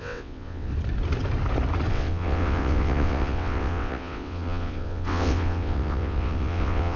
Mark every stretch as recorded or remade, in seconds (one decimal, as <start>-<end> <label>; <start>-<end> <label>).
0.0-0.7 remade; 0.7-1.9 recorded; 1.9-7.0 remade

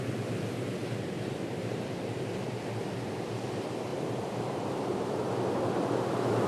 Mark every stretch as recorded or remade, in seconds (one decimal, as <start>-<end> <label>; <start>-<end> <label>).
0.0-0.8 recorded; 0.8-2.2 remade; 2.2-3.9 recorded; 3.9-5.3 remade; 5.3-6.5 recorded

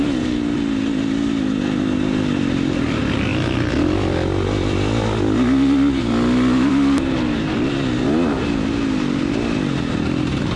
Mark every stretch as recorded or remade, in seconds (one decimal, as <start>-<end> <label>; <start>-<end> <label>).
0.0-10.6 recorded

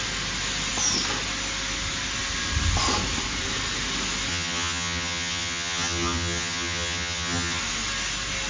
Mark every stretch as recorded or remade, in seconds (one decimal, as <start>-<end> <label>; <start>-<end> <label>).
0.0-4.3 recorded; 4.3-7.6 remade; 7.6-8.5 recorded

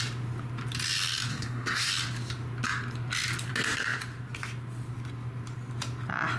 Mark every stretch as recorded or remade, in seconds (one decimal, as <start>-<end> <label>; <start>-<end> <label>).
0.0-1.3 recorded; 1.3-1.9 remade; 1.9-6.4 recorded

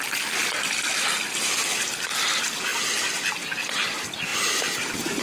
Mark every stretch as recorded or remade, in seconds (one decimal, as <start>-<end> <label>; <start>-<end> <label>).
0.0-5.2 recorded